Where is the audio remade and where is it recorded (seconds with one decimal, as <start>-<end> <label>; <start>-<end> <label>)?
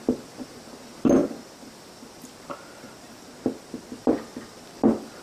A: 0.0-5.2 recorded